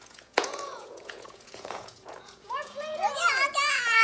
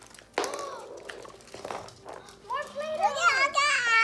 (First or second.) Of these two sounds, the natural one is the second